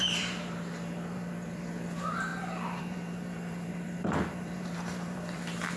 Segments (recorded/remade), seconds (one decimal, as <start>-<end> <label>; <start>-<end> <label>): 0.0-2.3 remade; 2.3-2.8 recorded; 2.8-5.8 remade